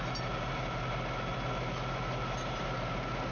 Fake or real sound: real